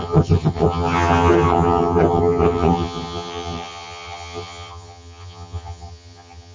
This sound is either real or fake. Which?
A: fake